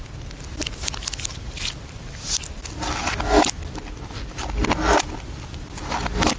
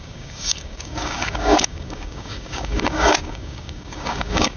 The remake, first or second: second